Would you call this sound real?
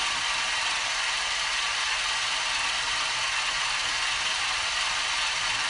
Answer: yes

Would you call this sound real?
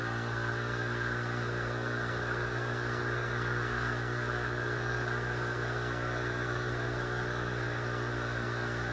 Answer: no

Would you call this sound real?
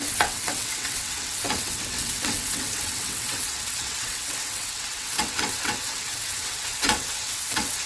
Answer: no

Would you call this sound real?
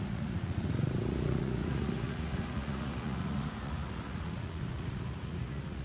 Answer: no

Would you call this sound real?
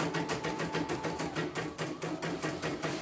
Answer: yes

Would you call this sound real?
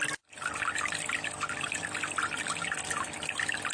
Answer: yes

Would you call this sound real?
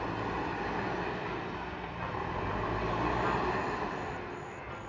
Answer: yes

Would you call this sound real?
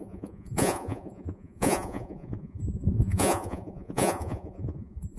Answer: no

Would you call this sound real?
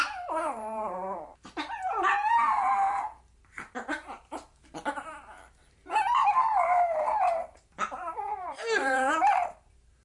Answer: no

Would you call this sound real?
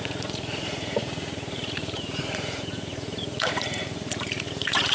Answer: no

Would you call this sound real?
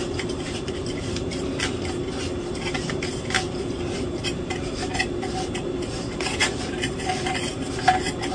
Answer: yes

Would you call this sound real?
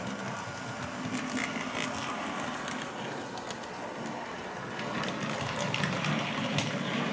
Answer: yes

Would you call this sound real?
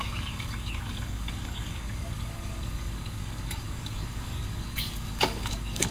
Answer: no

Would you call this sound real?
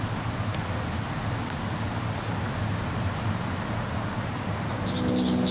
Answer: yes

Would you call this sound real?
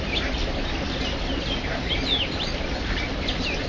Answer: yes